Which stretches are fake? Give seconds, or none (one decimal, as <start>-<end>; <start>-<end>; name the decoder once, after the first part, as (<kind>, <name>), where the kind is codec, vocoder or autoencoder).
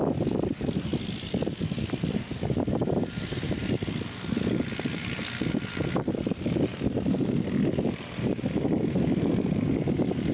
none